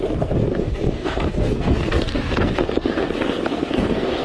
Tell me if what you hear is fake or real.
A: fake